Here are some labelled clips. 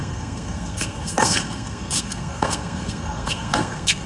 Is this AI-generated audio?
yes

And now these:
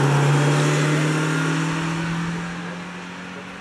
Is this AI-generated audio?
no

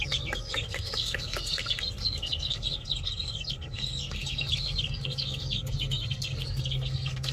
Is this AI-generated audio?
yes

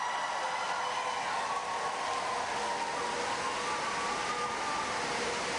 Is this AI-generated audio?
no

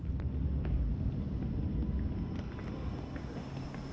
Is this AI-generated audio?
no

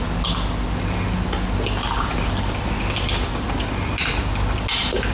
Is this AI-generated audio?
no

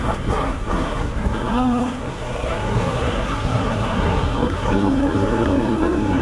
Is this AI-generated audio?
yes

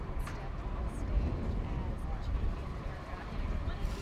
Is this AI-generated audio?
no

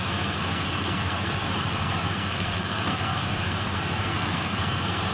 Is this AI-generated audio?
yes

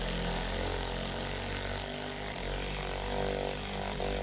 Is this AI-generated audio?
no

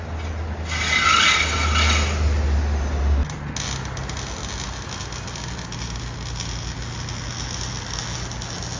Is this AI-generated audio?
no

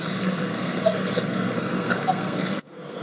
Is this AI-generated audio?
yes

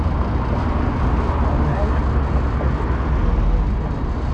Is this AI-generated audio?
no